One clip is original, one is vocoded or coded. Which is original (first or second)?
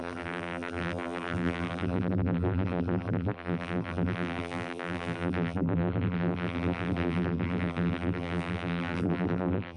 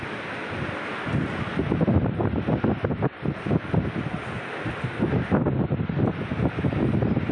second